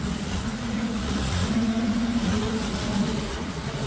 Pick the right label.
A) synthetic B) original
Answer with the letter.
A